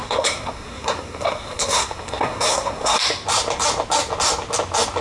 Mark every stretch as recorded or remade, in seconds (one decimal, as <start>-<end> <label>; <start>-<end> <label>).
0.0-3.0 remade; 3.0-5.0 recorded